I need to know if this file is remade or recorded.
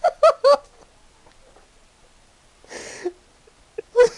recorded